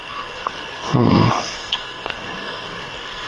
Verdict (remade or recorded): remade